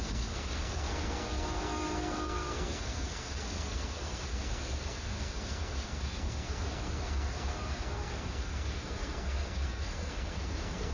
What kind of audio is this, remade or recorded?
remade